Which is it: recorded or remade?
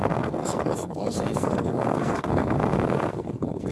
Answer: remade